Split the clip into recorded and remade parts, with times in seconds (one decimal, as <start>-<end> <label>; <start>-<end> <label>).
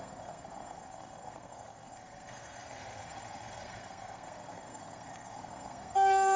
0.0-6.4 remade